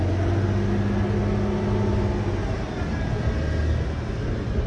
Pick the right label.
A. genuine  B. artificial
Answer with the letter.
A